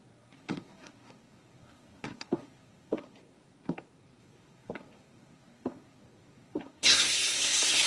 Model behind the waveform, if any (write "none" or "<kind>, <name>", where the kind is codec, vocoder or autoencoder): codec, SNAC